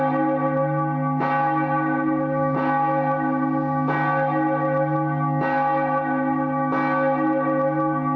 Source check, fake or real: real